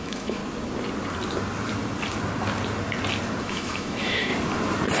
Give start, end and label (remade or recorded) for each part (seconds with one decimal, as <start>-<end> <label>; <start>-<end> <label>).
0.0-0.4 remade; 0.4-3.4 recorded; 3.4-4.3 remade; 4.3-5.0 recorded